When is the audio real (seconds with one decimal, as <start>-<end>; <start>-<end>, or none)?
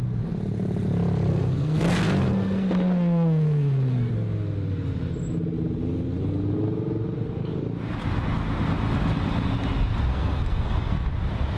0.0-1.3; 4.1-10.1; 11.1-11.6